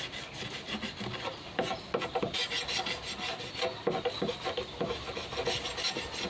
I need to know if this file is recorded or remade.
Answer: recorded